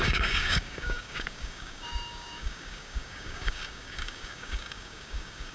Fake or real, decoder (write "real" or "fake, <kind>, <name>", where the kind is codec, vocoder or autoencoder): fake, codec, DAC